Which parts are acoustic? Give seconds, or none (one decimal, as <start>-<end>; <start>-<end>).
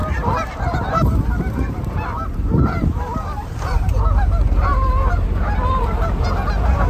4.0-4.7; 5.5-6.9